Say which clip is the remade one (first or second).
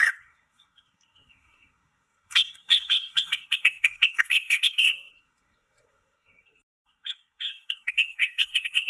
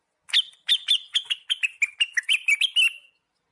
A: first